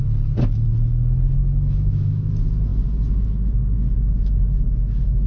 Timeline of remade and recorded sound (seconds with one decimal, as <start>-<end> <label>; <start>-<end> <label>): 0.0-1.4 recorded; 1.4-2.3 remade; 2.3-5.3 recorded